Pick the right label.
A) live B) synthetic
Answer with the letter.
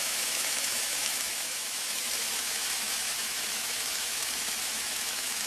B